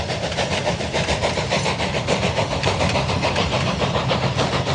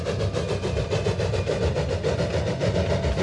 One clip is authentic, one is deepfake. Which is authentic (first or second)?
second